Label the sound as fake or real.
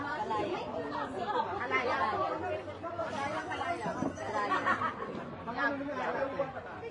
fake